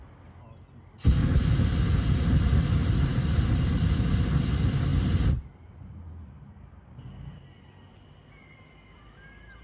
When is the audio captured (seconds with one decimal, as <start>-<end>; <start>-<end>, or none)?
0.0-2.8; 3.6-4.9; 6.9-9.6